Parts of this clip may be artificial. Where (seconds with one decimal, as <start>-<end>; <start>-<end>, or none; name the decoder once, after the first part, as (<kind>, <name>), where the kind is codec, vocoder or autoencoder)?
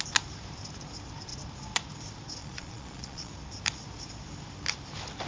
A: 2.4-3.3 (vocoder, Vocos)